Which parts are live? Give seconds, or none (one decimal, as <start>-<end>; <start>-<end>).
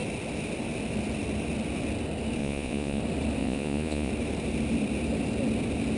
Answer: 0.0-2.4; 3.0-3.4; 4.1-6.0